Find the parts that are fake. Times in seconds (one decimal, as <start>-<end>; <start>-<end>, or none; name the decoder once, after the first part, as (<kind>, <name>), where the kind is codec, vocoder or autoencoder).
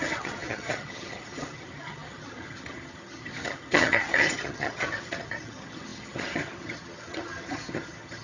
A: 0.0-8.2 (vocoder, HiFi-GAN)